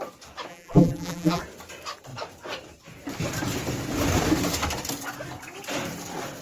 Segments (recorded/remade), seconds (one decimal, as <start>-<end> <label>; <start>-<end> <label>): 0.0-0.5 recorded; 0.5-1.4 remade; 1.4-6.4 recorded